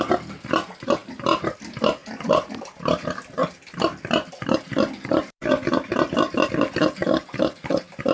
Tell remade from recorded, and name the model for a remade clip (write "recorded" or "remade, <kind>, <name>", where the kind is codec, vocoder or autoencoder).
recorded